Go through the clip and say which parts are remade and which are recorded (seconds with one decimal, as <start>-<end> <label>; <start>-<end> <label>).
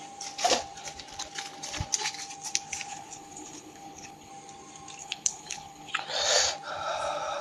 0.0-2.9 recorded; 2.9-4.3 remade; 4.3-5.0 recorded; 5.0-5.9 remade; 5.9-7.4 recorded